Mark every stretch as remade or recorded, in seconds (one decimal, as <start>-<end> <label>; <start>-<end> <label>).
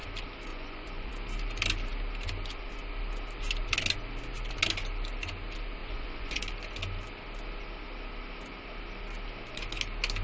0.0-0.5 recorded; 0.5-1.1 remade; 1.1-5.8 recorded; 5.8-6.4 remade; 6.4-10.2 recorded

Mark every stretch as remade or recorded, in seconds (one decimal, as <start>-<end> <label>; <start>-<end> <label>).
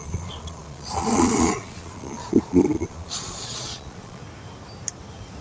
0.0-4.2 remade; 4.2-5.4 recorded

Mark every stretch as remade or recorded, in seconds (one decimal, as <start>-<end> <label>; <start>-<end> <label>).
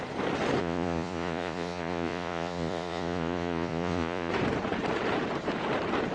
0.0-0.6 recorded; 0.6-4.3 remade; 4.3-6.1 recorded